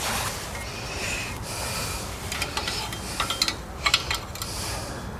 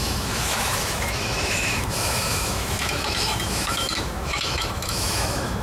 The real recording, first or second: first